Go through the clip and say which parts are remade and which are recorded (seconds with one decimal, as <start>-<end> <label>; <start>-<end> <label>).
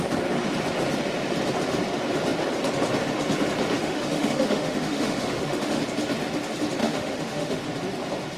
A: 0.0-3.8 recorded; 3.8-5.8 remade; 5.8-6.8 recorded; 6.8-7.6 remade; 7.6-8.4 recorded